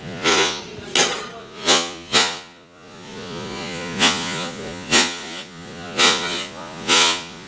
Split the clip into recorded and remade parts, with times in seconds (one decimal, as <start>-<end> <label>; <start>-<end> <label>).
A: 0.0-0.6 remade; 0.6-1.4 recorded; 1.4-7.5 remade